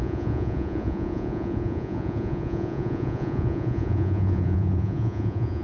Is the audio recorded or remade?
remade